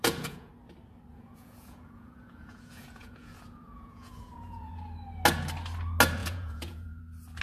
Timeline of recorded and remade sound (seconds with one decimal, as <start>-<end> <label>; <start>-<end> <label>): 0.0-0.5 remade; 0.5-1.1 recorded; 1.1-4.7 remade; 4.7-6.2 recorded; 6.2-7.0 remade; 7.0-7.4 recorded